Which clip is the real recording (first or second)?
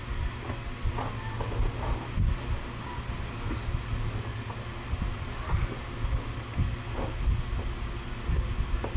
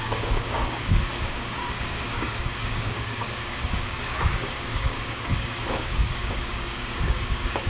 first